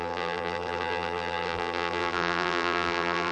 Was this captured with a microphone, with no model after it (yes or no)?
no